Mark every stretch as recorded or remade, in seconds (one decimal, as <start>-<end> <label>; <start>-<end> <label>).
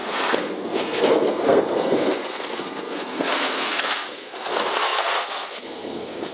0.0-6.3 remade